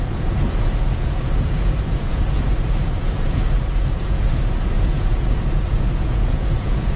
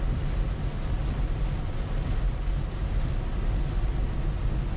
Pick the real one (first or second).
second